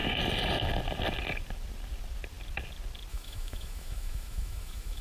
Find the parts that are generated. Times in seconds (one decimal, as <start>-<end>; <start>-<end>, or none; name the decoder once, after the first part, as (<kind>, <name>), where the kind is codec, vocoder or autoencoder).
3.1-5.0 (autoencoder, DAC-VAE)